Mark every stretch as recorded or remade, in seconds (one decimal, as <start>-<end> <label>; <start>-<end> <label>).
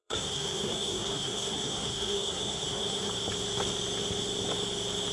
0.0-3.1 remade; 3.1-5.1 recorded